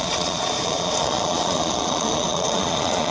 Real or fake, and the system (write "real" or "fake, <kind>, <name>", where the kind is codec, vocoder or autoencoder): fake, vocoder, Vocos